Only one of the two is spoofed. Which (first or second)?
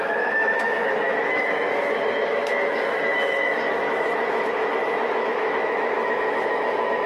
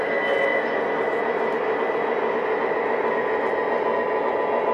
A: first